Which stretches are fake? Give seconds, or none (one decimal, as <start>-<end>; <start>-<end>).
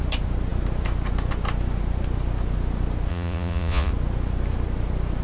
3.1-3.9